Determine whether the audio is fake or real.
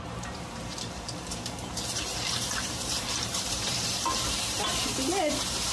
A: fake